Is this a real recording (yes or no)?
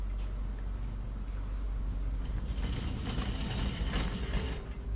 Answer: yes